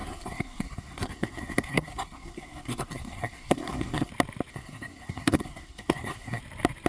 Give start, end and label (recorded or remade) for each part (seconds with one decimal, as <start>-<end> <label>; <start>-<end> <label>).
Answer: 0.0-4.1 remade; 4.1-4.5 recorded; 4.5-6.4 remade; 6.4-6.9 recorded

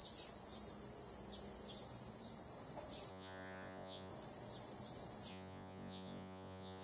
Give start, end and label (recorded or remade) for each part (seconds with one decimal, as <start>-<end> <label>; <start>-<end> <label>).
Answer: 0.0-3.1 recorded; 3.1-4.1 remade; 4.1-5.3 recorded; 5.3-6.8 remade